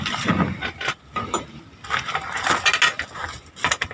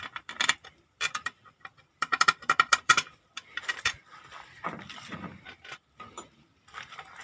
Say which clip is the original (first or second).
first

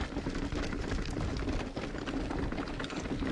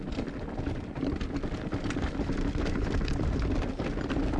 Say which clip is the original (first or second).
second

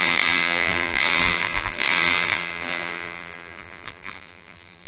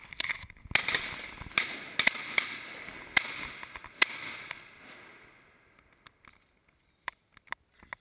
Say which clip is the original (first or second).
second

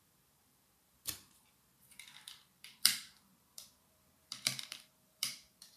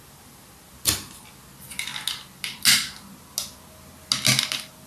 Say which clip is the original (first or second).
second